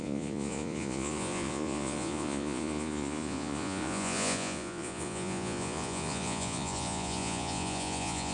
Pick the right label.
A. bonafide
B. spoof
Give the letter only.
B